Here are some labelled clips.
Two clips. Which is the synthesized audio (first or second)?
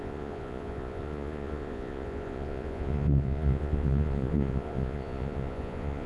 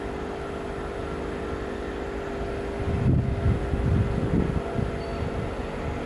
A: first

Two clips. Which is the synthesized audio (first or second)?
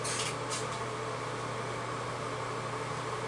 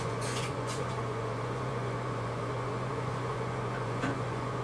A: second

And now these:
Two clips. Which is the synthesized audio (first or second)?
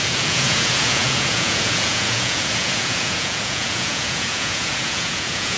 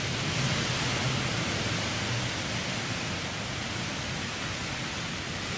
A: first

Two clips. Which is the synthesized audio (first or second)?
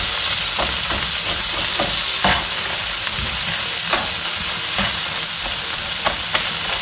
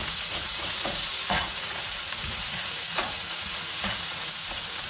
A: second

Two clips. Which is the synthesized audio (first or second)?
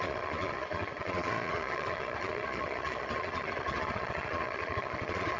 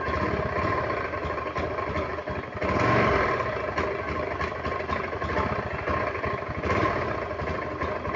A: first